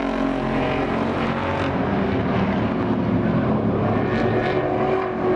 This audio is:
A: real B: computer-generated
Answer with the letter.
A